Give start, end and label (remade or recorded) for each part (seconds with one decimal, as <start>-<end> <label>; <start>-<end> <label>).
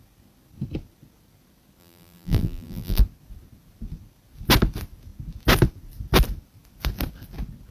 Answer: 0.0-1.8 recorded; 1.8-3.0 remade; 3.0-7.7 recorded